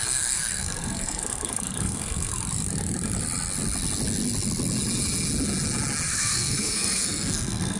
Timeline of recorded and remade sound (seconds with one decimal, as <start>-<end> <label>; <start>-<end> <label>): 0.0-2.3 remade; 2.3-6.1 recorded; 6.1-7.8 remade